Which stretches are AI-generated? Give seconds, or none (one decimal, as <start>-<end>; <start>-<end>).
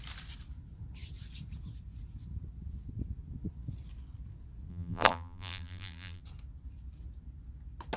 4.7-6.2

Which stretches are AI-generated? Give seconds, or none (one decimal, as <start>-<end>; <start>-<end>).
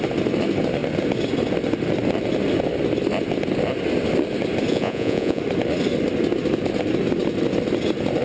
4.7-5.4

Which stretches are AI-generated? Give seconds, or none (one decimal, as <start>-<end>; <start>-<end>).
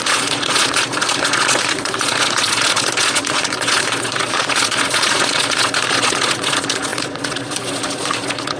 0.0-8.6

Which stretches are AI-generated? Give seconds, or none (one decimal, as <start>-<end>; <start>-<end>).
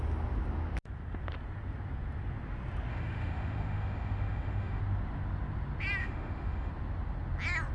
2.9-4.8; 6.0-6.7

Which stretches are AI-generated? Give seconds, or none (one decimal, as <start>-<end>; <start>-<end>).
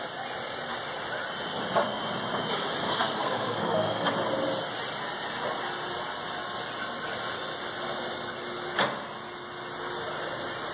2.8-4.1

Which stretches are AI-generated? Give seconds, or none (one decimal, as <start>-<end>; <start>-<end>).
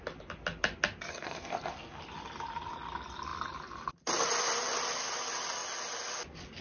1.1-2.0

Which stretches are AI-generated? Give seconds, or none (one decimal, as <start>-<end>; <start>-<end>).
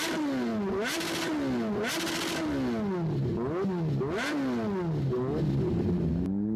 none